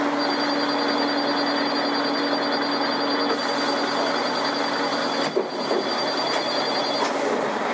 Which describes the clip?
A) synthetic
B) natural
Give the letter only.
B